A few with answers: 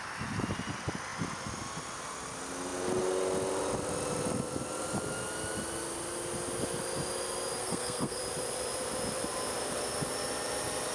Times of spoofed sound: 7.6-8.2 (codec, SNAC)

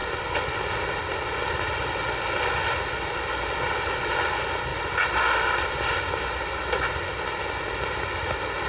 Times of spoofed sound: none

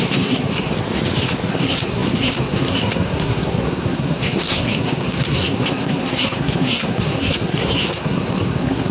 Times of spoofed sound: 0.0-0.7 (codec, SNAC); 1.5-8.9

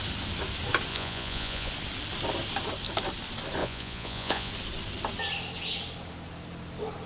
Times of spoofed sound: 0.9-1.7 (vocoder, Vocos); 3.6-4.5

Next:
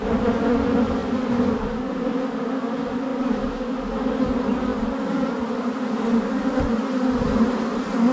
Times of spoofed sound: none

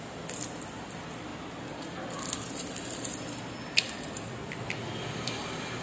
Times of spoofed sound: none

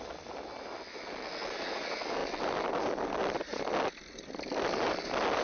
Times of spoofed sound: none